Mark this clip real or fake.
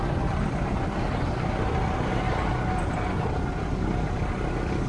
real